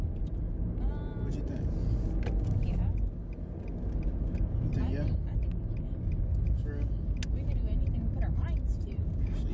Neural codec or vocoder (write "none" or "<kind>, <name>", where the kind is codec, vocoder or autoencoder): none